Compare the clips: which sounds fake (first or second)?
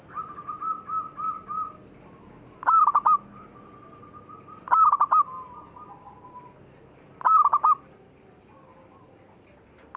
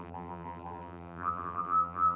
second